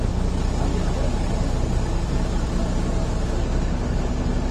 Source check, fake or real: real